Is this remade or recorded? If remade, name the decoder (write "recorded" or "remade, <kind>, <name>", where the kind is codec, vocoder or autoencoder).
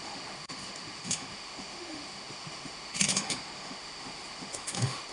remade, autoencoder, DAC-VAE